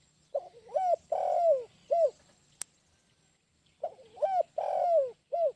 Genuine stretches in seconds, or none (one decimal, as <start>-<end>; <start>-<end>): 0.0-5.6